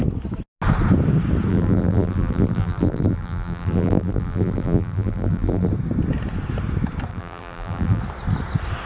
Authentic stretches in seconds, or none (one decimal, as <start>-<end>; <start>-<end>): 0.0-1.5; 5.7-7.1; 8.0-8.9